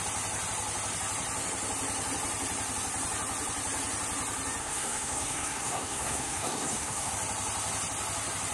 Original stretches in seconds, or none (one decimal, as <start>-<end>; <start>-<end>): 0.0-4.6; 7.1-8.5